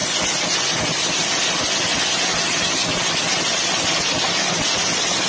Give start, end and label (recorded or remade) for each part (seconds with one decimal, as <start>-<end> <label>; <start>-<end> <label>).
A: 0.0-2.4 recorded; 2.4-2.8 remade; 2.8-5.3 recorded